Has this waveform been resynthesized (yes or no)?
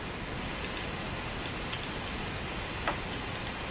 no